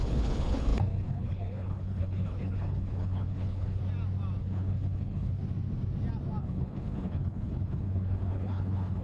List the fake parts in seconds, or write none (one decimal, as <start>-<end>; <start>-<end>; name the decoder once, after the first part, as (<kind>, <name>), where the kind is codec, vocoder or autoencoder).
0.0-3.8 (codec, HILCodec); 4.4-5.4; 6.4-9.0